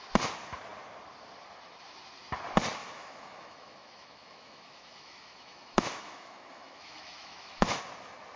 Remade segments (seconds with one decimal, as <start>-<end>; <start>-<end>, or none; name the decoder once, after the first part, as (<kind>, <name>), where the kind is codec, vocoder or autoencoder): 2.8-7.8 (autoencoder, DAC-VAE)